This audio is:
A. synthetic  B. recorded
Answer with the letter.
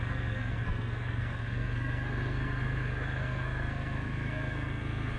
A